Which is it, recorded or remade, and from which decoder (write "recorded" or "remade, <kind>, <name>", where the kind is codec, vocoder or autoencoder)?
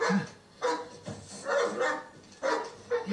recorded